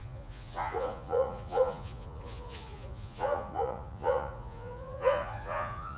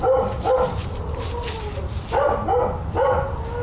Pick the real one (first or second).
second